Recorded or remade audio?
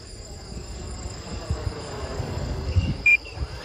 remade